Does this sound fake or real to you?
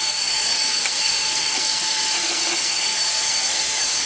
fake